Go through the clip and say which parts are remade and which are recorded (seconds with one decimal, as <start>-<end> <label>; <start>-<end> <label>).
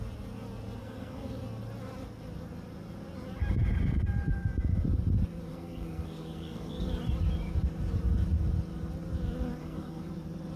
0.0-0.8 recorded; 0.8-1.4 remade; 1.4-5.5 recorded; 5.5-6.9 remade; 6.9-9.6 recorded; 9.6-10.1 remade; 10.1-10.6 recorded